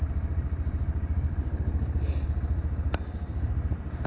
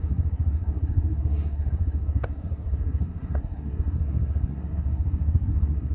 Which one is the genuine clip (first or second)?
first